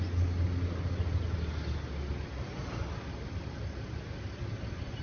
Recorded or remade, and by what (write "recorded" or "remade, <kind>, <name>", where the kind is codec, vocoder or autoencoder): recorded